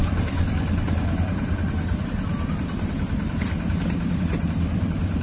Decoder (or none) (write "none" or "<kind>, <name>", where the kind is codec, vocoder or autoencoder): vocoder, BigVGAN v2